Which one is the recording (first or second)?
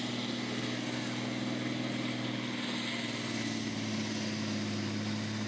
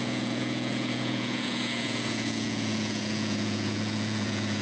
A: first